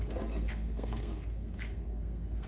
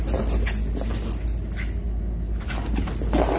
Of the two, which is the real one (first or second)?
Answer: second